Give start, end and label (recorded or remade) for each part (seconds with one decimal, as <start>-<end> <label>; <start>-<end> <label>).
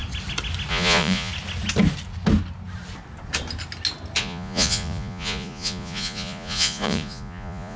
0.0-0.7 recorded; 0.7-1.3 remade; 1.3-4.2 recorded; 4.2-7.8 remade